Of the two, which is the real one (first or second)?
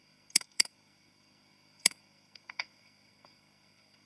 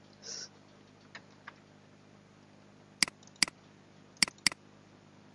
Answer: second